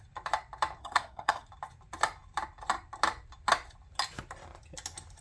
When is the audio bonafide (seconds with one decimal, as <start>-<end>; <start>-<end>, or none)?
0.0-0.8; 1.5-5.2

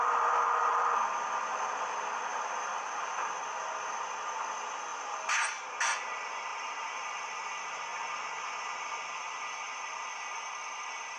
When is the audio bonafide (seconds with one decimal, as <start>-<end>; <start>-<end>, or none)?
0.0-2.3; 3.2-6.5; 7.1-11.2

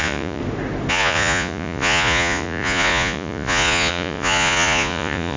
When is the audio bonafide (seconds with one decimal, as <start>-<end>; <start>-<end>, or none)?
0.4-0.9